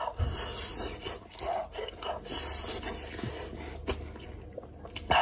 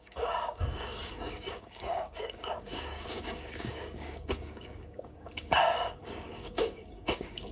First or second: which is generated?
second